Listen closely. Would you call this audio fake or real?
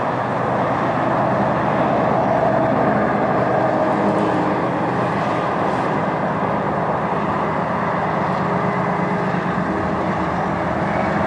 real